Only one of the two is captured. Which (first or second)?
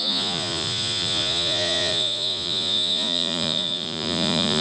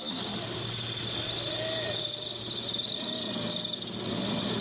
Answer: second